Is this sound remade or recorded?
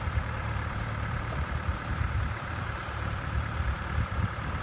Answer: remade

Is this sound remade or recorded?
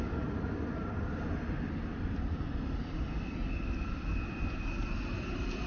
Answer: recorded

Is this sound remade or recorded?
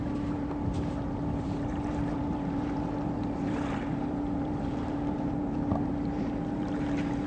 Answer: remade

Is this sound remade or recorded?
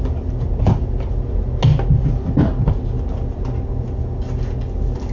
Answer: recorded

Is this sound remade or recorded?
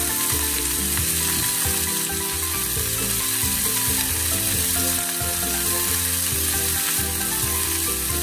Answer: recorded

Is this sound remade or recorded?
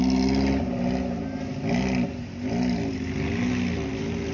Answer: recorded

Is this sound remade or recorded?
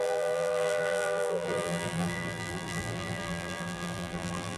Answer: remade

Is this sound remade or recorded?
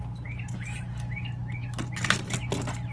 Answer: recorded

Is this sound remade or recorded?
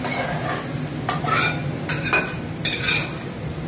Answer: recorded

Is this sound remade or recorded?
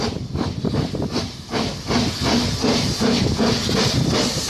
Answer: recorded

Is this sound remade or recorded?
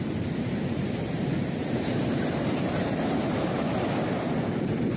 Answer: remade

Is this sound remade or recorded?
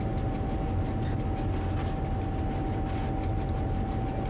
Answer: recorded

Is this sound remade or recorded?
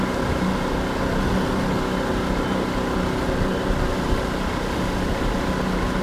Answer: recorded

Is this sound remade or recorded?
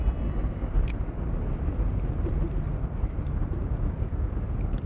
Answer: recorded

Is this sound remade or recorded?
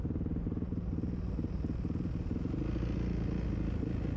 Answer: recorded